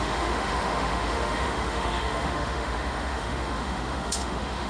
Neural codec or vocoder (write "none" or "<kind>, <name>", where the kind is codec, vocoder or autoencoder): autoencoder, DAC-VAE